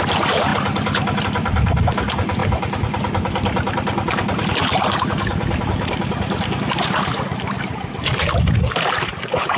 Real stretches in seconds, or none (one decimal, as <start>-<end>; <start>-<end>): none